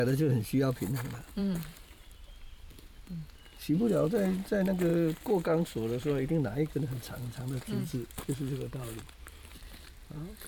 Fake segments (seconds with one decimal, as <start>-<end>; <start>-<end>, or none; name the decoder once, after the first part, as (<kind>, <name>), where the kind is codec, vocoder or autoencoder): 1.4-2.8 (vocoder, BigVGAN v2); 4.9-9.9